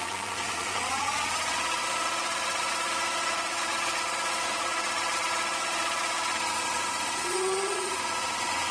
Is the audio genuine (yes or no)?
no